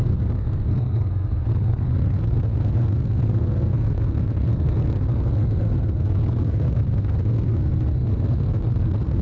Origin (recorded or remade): remade